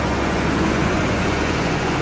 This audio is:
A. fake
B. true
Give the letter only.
A